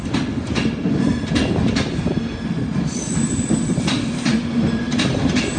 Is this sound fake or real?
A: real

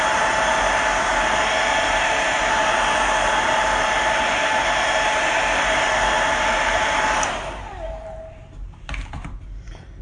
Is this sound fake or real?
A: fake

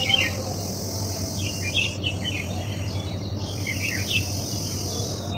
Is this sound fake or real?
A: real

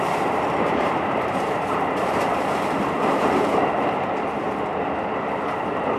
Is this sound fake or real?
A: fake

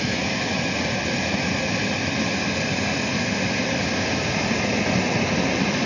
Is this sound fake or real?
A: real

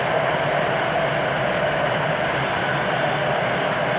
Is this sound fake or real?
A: real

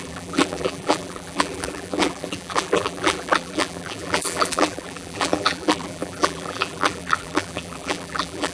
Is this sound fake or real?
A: fake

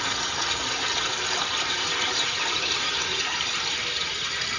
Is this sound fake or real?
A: fake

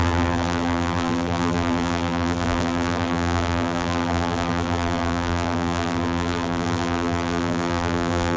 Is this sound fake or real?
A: fake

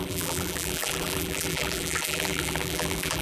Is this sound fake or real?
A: fake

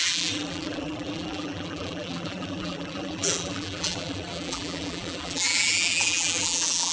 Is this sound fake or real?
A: fake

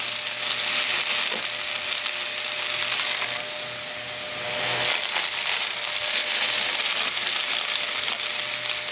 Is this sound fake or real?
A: real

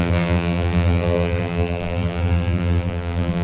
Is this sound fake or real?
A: fake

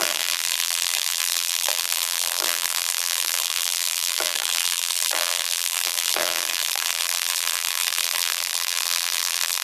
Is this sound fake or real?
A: fake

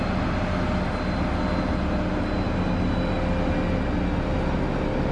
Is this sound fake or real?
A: real